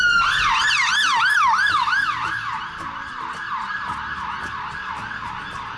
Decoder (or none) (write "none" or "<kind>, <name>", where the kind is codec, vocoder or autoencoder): none